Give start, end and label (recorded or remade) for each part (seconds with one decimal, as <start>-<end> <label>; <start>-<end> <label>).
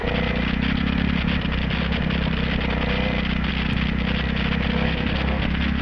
0.0-4.7 recorded; 4.7-5.8 remade